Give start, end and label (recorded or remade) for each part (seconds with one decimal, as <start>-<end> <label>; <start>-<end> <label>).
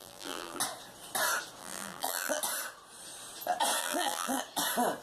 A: 0.0-0.6 remade; 0.6-1.6 recorded; 1.6-2.4 remade; 2.4-3.8 recorded; 3.8-4.4 remade; 4.4-5.0 recorded